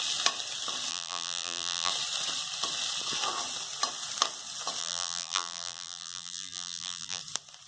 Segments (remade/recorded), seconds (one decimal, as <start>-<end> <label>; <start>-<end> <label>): 0.0-0.9 recorded; 0.9-1.9 remade; 1.9-4.8 recorded; 4.8-7.2 remade; 7.2-7.7 recorded